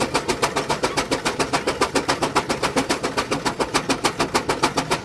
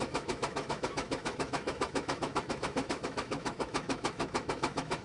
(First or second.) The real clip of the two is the first